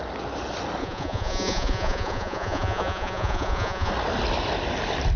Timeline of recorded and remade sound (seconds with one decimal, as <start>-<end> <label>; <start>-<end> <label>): 0.0-0.8 recorded; 0.8-3.9 remade; 3.9-5.2 recorded